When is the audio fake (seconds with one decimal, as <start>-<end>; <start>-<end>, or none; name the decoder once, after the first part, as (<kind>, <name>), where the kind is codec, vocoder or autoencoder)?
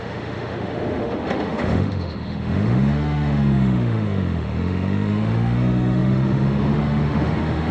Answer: 0.0-7.7 (autoencoder, DAC-VAE)